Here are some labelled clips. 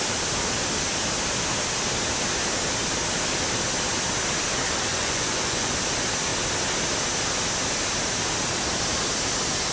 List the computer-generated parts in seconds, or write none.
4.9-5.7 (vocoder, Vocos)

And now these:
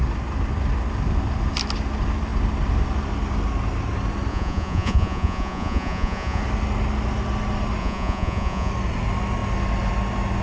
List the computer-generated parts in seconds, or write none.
4.3-6.4 (vocoder, Vocos); 7.8-8.7

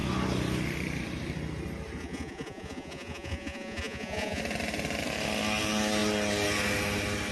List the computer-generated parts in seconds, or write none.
2.0-4.4 (vocoder, Vocos)

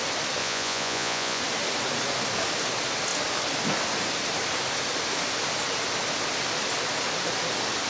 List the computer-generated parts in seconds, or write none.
0.4-1.4 (vocoder, Vocos)